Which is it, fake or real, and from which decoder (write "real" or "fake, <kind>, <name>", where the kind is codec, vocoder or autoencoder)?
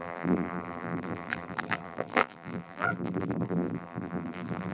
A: fake, vocoder, BigVGAN v2